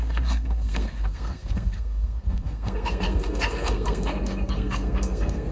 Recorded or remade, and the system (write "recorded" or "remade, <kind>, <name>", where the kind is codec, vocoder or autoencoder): remade, codec, SNAC